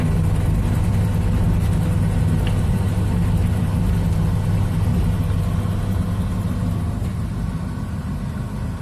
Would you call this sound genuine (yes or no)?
yes